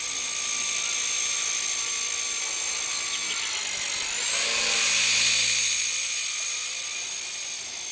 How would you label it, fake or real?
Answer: real